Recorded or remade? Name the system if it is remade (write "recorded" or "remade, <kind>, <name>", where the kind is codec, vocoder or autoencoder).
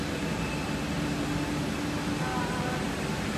recorded